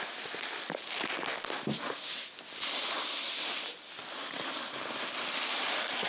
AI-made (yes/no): no